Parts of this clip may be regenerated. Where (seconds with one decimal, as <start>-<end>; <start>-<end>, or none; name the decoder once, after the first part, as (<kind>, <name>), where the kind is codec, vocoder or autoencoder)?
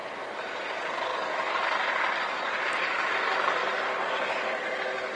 none